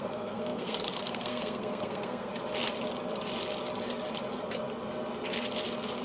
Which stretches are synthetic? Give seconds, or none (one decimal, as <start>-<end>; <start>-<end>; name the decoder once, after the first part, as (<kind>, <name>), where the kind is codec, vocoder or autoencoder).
0.0-2.3 (codec, SNAC)